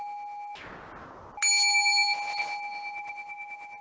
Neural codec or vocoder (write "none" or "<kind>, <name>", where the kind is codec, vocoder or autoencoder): none